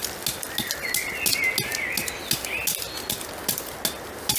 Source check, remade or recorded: recorded